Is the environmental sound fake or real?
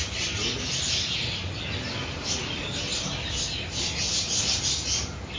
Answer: real